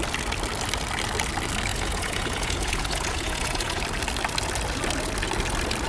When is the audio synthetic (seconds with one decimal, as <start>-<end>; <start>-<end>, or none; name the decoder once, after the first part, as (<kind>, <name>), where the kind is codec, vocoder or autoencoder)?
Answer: 1.7-3.8 (vocoder, Vocos)